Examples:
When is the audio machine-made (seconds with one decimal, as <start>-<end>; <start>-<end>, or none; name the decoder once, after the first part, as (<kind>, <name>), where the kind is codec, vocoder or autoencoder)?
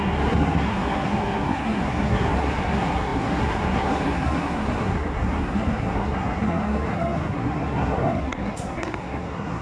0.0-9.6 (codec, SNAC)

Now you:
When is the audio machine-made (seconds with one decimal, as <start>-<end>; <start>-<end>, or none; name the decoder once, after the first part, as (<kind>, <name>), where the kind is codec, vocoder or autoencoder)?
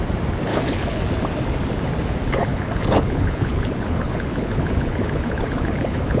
0.5-1.0 (codec, HILCodec); 2.5-6.2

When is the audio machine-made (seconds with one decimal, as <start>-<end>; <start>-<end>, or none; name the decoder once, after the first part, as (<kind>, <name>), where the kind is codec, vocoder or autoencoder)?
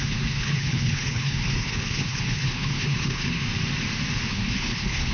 0.0-3.4 (codec, HILCodec); 4.3-5.1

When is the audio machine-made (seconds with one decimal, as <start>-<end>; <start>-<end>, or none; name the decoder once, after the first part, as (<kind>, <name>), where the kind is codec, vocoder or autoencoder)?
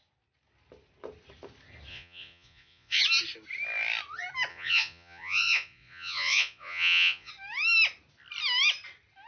1.9-3.0 (vocoder, Vocos); 4.5-7.3